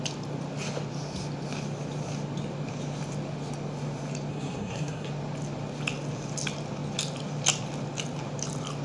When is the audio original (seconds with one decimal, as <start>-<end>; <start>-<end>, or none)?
0.0-4.3; 5.1-8.8